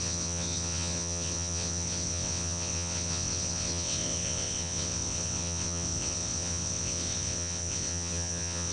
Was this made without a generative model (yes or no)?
no